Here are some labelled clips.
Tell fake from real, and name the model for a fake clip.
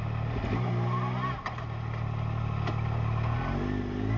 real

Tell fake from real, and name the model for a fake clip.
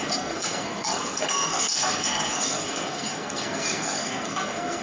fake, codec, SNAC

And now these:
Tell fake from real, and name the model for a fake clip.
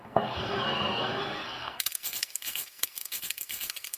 fake, codec, SNAC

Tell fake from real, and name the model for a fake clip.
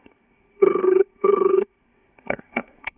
fake, codec, SNAC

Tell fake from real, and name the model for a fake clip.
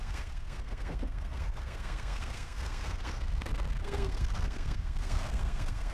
fake, codec, SNAC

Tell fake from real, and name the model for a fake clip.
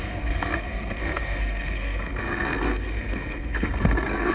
fake, codec, SNAC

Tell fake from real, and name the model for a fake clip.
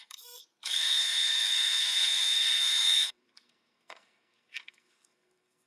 fake, codec, SNAC